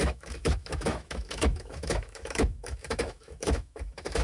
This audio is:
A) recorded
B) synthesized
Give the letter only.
B